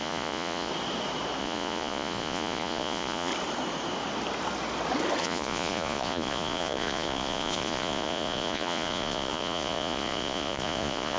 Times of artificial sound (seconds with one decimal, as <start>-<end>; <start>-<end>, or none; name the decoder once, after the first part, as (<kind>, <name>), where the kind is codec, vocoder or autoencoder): 0.0-0.7 (vocoder, Vocos); 1.4-3.3; 5.2-11.2